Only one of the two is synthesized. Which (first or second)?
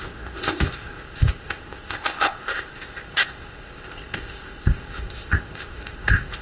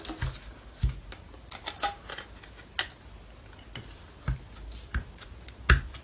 first